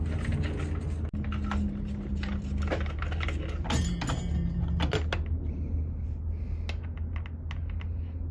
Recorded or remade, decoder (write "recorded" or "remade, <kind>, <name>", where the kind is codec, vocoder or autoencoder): recorded